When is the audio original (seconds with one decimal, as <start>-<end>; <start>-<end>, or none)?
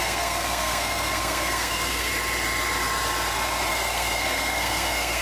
2.1-3.7